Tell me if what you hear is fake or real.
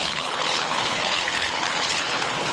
fake